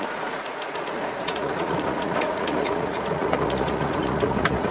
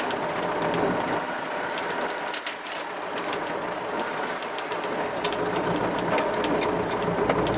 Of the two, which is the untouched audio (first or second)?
second